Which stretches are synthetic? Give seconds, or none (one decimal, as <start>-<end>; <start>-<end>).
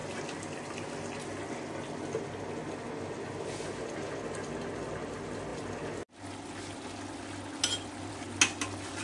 none